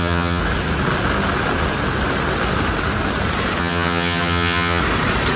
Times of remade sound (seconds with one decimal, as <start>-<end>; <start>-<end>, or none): 0.0-0.4; 3.6-4.8